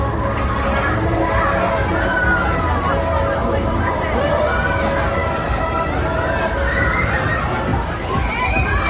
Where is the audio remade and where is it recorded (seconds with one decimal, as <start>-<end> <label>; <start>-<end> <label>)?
0.0-3.4 recorded; 3.4-4.4 remade; 4.4-5.2 recorded; 5.2-6.1 remade; 6.1-8.9 recorded